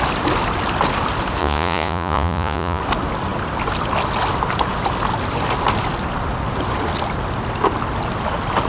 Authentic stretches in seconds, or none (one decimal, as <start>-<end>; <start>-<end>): 0.0-1.4; 2.8-8.7